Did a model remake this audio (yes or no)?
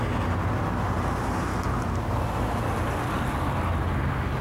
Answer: no